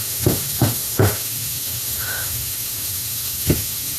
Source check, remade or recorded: remade